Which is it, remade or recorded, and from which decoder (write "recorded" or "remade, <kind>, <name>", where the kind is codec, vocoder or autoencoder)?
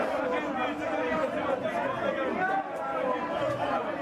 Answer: recorded